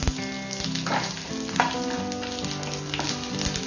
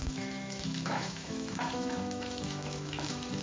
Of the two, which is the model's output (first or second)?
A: second